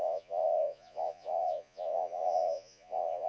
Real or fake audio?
fake